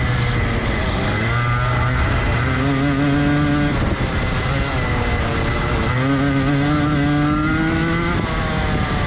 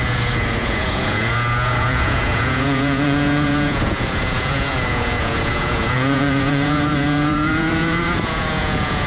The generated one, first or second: second